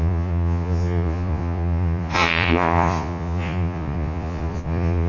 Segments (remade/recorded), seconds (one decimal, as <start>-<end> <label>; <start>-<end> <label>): 0.0-5.1 remade